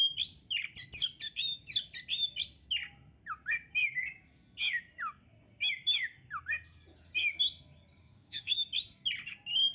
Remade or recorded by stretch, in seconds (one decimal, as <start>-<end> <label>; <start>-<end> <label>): 0.0-8.0 recorded; 8.0-8.6 remade; 8.6-9.7 recorded